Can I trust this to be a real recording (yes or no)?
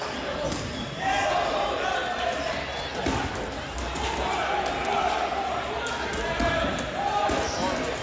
yes